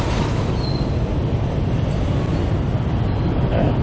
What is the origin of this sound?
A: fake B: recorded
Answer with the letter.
B